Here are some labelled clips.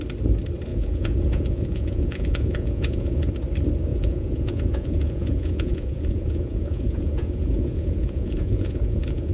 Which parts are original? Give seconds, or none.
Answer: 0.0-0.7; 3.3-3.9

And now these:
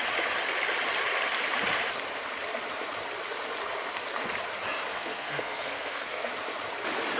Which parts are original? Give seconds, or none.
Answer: 0.0-4.9; 6.3-7.2

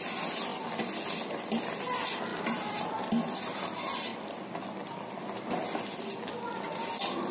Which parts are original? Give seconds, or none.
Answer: 0.0-7.3

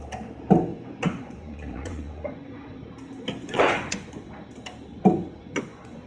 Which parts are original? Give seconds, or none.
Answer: 0.0-0.7; 2.8-3.4; 4.3-4.9